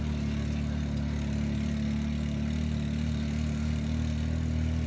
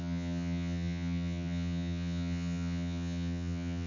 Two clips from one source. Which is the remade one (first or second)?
second